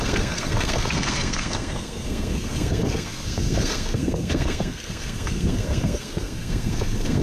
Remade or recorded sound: remade